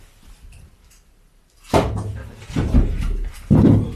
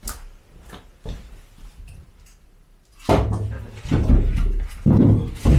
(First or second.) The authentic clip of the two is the second